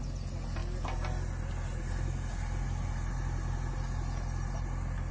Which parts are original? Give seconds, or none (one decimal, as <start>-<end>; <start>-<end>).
0.0-5.1